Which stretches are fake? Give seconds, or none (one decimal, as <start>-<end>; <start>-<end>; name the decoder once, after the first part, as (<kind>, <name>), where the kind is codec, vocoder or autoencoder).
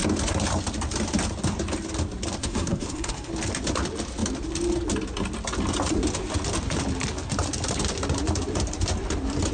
2.4-3.3 (codec, SNAC)